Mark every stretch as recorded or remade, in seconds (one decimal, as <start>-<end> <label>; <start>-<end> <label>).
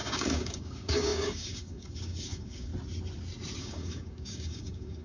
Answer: 0.0-2.7 remade; 2.7-3.6 recorded; 3.6-5.0 remade